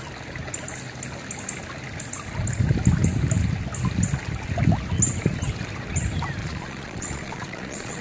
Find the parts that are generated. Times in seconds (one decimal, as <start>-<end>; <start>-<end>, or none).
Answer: 6.4-8.0